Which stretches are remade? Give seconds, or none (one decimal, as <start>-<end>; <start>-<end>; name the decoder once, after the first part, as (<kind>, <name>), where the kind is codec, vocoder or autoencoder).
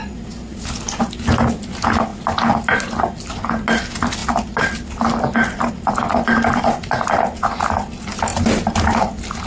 none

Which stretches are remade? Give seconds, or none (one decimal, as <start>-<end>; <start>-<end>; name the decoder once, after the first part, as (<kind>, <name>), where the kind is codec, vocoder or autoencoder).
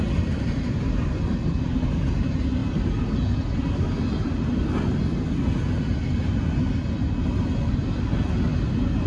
none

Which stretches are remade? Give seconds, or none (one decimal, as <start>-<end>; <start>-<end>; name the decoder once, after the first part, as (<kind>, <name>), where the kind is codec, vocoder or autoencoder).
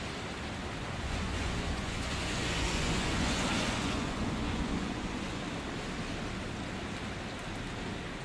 0.8-5.4 (vocoder, Vocos)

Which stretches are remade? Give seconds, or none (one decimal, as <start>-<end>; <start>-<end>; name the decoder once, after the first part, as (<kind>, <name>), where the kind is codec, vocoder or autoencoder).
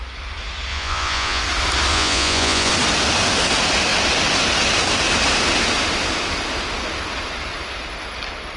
0.7-1.4 (vocoder, Vocos); 1.9-2.7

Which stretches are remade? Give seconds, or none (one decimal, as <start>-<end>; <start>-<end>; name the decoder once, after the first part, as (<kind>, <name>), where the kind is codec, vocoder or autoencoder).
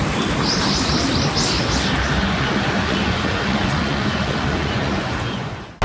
2.2-5.8 (vocoder, Vocos)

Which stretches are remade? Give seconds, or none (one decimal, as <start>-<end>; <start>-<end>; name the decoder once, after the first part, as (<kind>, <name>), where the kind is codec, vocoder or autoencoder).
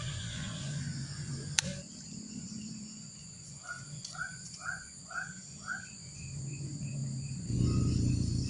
0.0-1.7 (vocoder, Vocos); 2.3-8.5